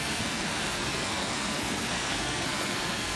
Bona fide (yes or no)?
no